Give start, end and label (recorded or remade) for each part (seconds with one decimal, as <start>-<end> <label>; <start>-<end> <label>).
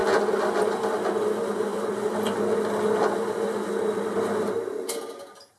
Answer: 0.0-5.6 recorded